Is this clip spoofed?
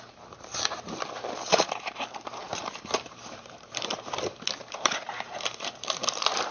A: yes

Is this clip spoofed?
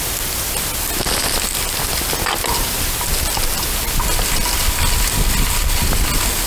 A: no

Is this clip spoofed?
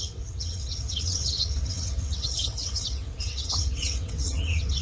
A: yes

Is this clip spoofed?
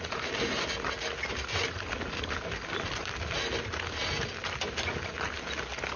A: no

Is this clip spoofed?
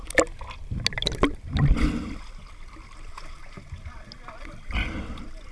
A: no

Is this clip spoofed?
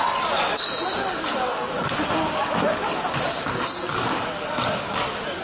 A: no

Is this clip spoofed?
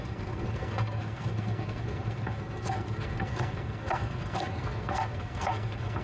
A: yes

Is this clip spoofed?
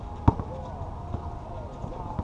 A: no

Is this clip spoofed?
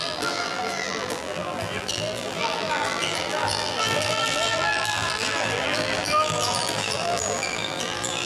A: yes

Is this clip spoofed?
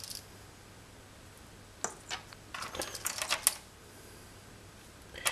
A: no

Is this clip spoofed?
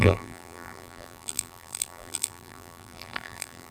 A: yes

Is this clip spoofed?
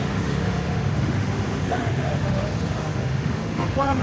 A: yes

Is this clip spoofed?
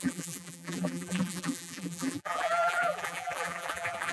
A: yes